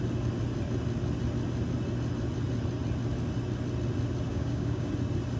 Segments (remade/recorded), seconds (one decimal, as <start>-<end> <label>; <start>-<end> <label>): 0.0-4.3 recorded; 4.3-4.9 remade; 4.9-5.4 recorded